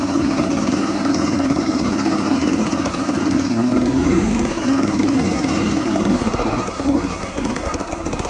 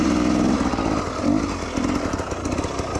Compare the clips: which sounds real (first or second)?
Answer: second